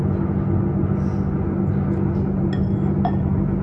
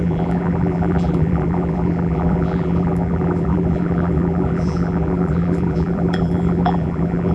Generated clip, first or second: second